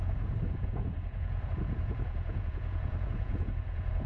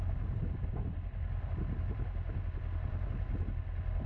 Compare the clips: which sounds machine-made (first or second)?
first